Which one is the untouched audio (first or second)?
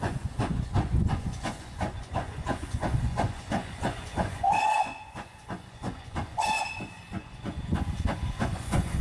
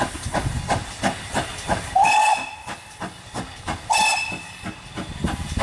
second